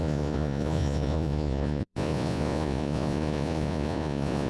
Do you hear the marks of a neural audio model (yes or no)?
yes